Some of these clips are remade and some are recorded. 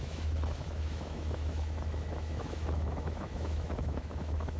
remade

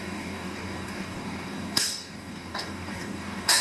remade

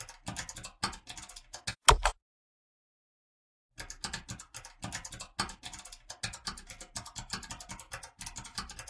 recorded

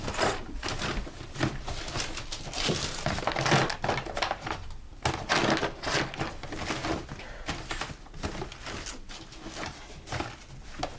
recorded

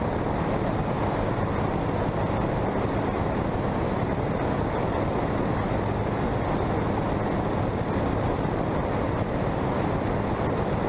recorded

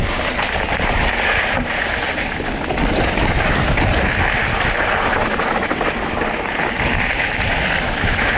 recorded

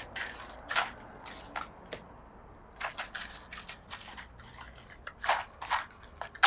recorded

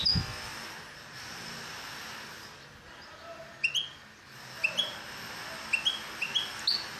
recorded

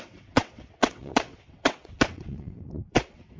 remade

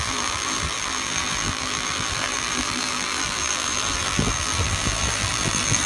remade